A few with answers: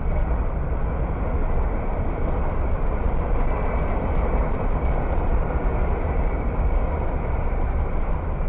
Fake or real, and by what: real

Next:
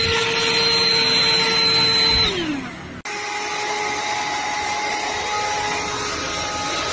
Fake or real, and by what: real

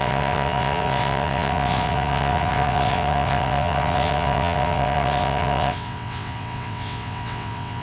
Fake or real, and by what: fake, vocoder, WaveNeXt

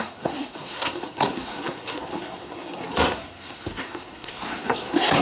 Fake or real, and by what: fake, codec, SNAC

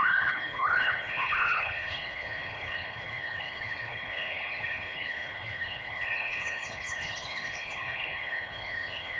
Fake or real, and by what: fake, codec, HILCodec